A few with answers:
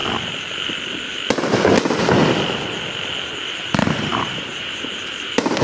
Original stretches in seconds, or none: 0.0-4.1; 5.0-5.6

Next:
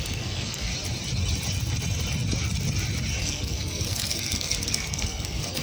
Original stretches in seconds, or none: 0.7-3.2

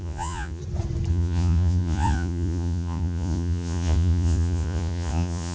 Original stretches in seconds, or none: 0.6-1.1

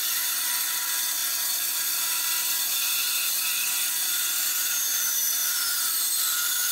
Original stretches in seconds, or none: 0.0-6.7

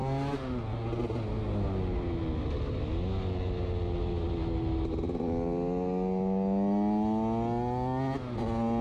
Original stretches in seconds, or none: 0.0-8.8

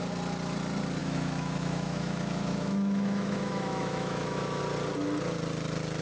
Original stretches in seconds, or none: 0.0-1.0; 4.6-6.0

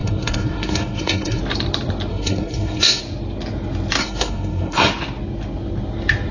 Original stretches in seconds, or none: 1.4-2.1; 3.0-4.0; 4.9-6.3